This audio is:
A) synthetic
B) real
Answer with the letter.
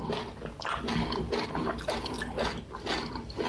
B